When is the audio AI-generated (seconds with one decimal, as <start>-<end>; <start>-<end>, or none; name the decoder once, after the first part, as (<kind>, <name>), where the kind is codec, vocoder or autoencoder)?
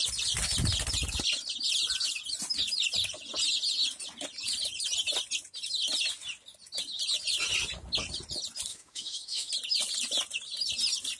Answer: 8.7-9.5 (autoencoder, DAC-VAE)